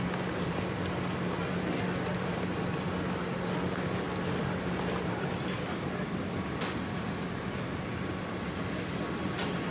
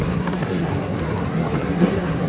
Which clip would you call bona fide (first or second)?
first